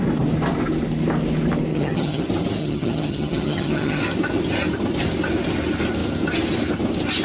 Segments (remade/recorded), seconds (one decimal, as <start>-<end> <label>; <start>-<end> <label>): 0.0-1.7 recorded; 1.7-2.2 remade; 2.2-2.6 recorded; 2.6-4.0 remade; 4.0-7.2 recorded